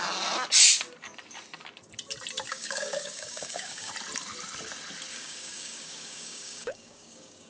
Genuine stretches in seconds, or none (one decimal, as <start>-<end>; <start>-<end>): 0.0-2.5; 3.9-5.1